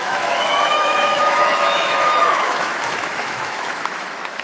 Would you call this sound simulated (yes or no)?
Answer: yes